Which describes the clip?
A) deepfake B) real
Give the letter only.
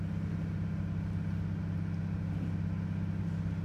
B